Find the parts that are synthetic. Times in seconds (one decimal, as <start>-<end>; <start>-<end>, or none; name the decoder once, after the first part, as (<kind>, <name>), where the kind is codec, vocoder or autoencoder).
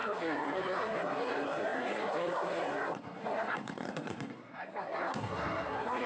0.0-6.1 (codec, SNAC)